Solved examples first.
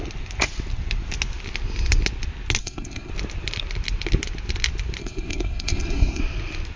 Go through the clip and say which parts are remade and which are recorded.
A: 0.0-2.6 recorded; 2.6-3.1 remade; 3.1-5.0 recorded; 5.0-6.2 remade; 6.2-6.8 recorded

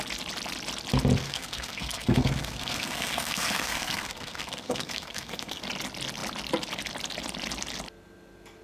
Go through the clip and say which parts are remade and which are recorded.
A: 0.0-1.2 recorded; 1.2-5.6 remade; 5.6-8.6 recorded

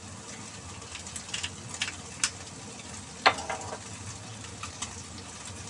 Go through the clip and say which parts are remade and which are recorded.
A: 0.0-5.7 recorded